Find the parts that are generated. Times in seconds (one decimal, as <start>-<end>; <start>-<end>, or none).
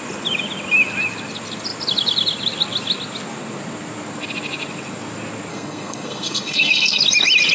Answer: 5.5-7.0